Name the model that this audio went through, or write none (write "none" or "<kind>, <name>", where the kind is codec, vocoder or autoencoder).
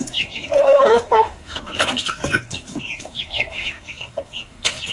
codec, SNAC